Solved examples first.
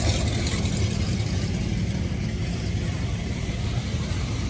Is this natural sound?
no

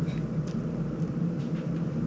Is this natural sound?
yes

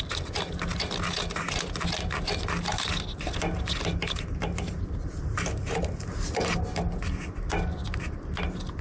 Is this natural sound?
yes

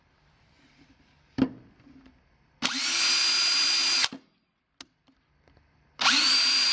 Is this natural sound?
yes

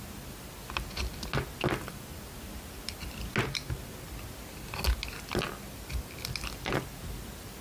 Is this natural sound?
yes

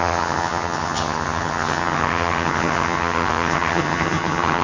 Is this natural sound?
no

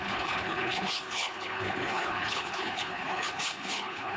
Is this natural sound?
no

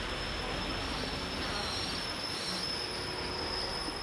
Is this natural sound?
yes